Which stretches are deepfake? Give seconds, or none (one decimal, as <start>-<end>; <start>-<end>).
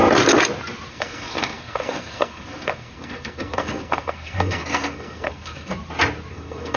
0.9-5.7; 6.3-6.8